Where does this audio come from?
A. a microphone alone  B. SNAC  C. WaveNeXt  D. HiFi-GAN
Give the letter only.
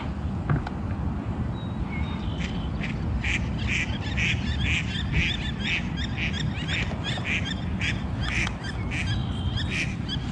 A